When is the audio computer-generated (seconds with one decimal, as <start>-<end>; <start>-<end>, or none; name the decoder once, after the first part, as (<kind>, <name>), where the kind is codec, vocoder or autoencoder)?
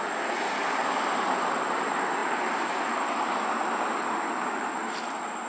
none